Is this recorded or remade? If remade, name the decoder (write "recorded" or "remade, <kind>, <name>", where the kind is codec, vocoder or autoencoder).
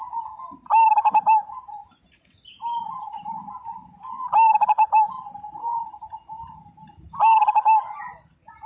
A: recorded